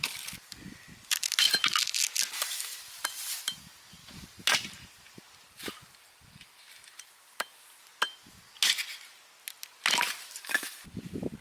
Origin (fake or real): real